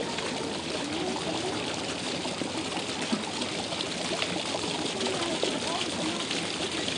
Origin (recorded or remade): recorded